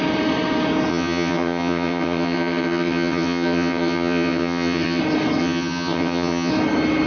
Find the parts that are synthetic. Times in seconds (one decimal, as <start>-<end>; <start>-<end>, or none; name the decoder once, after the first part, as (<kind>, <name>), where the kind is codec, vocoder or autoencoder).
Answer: 0.9-5.0 (vocoder, HiFi-GAN); 5.4-6.5

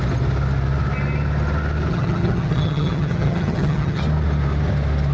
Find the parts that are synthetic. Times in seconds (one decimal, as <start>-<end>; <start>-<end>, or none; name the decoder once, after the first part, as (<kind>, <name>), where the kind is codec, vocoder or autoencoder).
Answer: 1.9-4.0 (vocoder, HiFi-GAN)